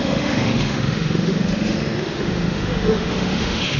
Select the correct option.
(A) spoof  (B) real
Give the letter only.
A